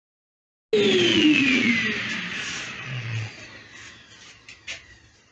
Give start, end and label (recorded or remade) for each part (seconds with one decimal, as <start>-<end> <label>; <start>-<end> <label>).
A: 0.0-1.1 recorded; 1.1-1.7 remade; 1.7-2.3 recorded; 2.3-3.4 remade; 3.4-5.3 recorded